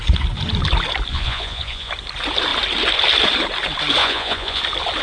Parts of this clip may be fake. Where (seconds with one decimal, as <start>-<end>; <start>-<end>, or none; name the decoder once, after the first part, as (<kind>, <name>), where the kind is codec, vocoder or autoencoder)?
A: 1.1-1.9 (vocoder, Vocos); 4.0-4.6